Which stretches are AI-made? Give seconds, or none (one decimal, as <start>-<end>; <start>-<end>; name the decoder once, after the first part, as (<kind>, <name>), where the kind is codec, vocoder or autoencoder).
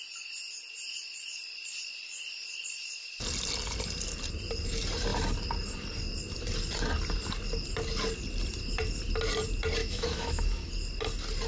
9.8-10.7 (autoencoder, DAC-VAE)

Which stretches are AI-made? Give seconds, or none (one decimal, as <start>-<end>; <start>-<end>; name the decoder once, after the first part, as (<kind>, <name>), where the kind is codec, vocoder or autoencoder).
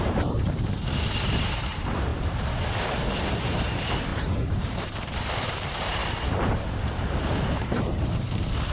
0.0-2.1 (vocoder, BigVGAN v2); 3.3-6.0; 7.5-8.7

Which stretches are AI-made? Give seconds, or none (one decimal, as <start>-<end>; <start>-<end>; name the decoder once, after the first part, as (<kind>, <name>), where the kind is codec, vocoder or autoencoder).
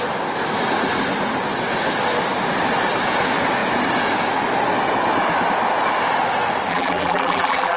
6.7-7.8 (vocoder, BigVGAN v2)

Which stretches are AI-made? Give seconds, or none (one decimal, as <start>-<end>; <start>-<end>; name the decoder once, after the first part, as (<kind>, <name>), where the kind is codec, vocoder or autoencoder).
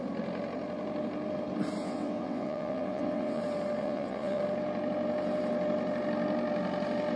1.8-3.4 (vocoder, WaveNeXt); 3.8-4.4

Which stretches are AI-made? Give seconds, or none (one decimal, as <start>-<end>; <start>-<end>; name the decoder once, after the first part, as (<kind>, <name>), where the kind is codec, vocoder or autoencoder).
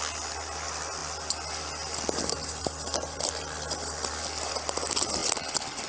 none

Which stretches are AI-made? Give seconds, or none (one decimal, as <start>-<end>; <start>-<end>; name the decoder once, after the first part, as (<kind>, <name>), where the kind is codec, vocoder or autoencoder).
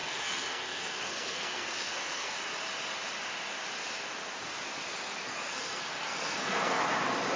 0.0-2.4 (codec, SNAC); 5.1-6.8